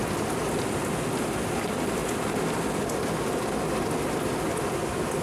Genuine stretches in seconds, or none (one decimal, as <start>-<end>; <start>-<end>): 0.0-1.1; 2.0-5.2